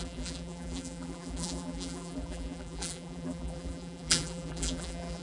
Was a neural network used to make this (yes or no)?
yes